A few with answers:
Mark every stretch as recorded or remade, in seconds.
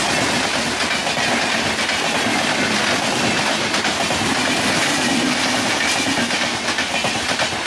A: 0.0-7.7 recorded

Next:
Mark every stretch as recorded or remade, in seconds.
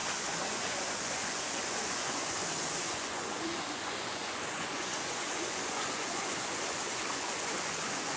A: 0.0-8.2 remade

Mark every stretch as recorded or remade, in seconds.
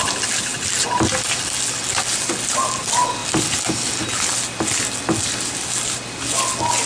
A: 0.0-6.9 recorded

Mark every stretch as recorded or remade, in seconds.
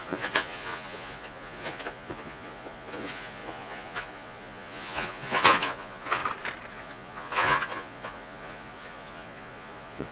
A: 0.0-6.2 remade; 6.2-6.7 recorded; 6.7-10.1 remade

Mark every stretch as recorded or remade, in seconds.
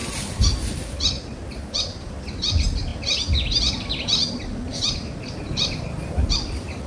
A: 0.0-6.9 recorded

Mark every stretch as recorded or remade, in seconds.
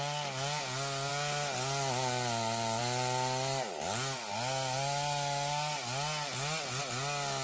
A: 0.0-7.4 recorded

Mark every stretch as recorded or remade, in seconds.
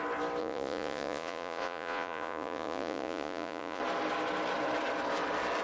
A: 0.0-0.4 recorded; 0.4-3.8 remade; 3.8-5.6 recorded